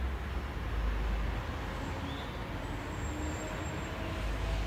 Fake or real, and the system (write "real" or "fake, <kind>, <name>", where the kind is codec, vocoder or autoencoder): real